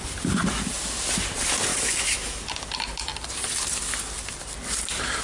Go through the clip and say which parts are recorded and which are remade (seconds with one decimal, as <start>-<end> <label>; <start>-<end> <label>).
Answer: 0.0-1.7 recorded; 1.7-2.4 remade; 2.4-5.2 recorded

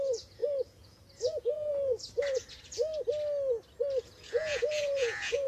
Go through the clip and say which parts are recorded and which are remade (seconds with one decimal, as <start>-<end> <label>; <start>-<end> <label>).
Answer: 0.0-2.9 remade; 2.9-4.0 recorded; 4.0-5.5 remade

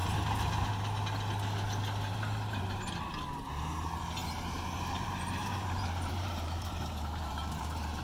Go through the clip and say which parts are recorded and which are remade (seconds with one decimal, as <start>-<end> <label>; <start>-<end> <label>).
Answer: 0.0-0.7 remade; 0.7-2.1 recorded; 2.1-2.8 remade; 2.8-4.2 recorded; 4.2-8.0 remade

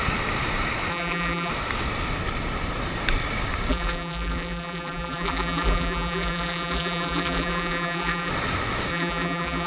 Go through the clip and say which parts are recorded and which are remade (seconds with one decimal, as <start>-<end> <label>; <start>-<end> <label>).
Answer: 0.0-0.9 recorded; 0.9-1.5 remade; 1.5-3.7 recorded; 3.7-8.3 remade; 8.3-8.9 recorded; 8.9-9.7 remade

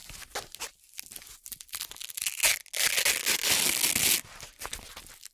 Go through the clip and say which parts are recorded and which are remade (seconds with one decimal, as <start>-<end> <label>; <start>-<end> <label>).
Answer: 0.0-5.3 recorded

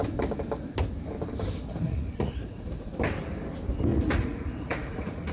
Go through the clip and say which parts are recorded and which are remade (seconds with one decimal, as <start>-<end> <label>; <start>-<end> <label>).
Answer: 0.0-1.7 recorded; 1.7-2.9 remade; 2.9-3.9 recorded; 3.9-5.3 remade

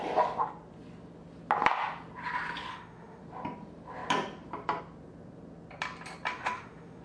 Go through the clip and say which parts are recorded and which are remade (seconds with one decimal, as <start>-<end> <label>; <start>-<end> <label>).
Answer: 0.0-2.7 recorded; 2.7-3.2 remade; 3.2-6.3 recorded; 6.3-7.0 remade

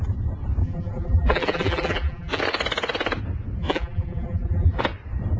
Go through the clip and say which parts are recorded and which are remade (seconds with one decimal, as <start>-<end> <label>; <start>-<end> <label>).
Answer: 0.0-0.6 recorded; 0.6-2.4 remade; 2.4-3.6 recorded; 3.6-4.8 remade; 4.8-5.4 recorded